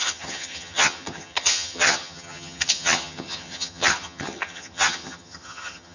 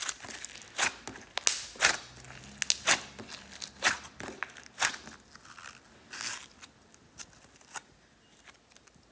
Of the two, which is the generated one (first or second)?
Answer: first